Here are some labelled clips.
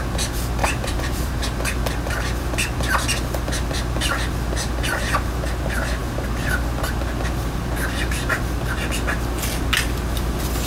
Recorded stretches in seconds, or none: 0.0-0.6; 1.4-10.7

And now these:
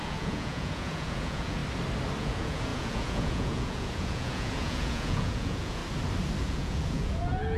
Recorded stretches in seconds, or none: 1.6-2.2; 5.8-6.4